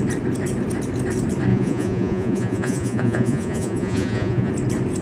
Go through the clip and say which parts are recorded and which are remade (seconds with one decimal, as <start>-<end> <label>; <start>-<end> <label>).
0.0-1.5 recorded; 1.5-4.5 remade; 4.5-5.0 recorded